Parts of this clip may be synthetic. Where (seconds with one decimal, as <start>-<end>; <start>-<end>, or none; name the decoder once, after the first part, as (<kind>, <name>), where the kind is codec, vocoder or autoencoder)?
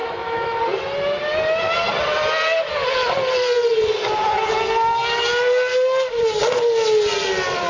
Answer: 0.0-0.6 (autoencoder, DAC-VAE); 5.7-6.2